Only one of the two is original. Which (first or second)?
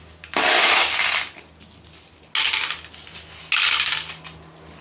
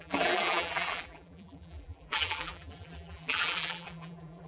first